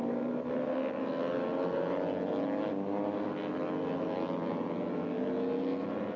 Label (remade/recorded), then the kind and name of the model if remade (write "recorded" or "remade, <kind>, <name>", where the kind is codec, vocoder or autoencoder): recorded